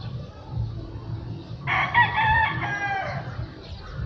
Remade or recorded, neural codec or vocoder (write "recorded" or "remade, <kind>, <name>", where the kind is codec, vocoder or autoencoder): recorded